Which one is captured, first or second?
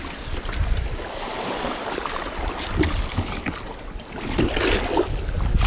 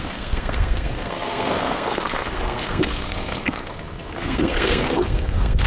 first